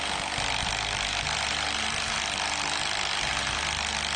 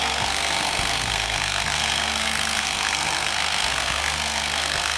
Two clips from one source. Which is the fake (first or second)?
second